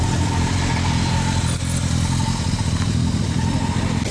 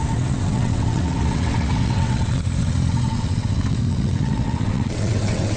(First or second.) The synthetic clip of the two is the second